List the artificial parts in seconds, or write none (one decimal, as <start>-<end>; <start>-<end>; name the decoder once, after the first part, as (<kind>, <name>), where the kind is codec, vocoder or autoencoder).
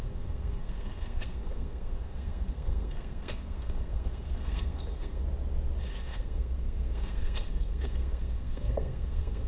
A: 0.0-5.2 (codec, SNAC); 5.8-9.5